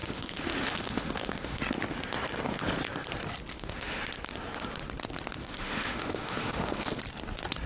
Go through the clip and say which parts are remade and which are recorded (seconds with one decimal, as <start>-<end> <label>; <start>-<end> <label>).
0.0-1.6 remade; 1.6-3.5 recorded; 3.5-4.0 remade; 4.0-5.4 recorded; 5.4-7.0 remade; 7.0-7.7 recorded